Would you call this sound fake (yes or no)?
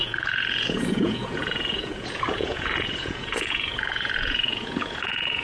yes